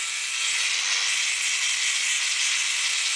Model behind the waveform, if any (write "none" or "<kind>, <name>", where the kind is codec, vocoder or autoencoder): none